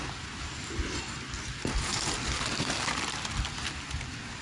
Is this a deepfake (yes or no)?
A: no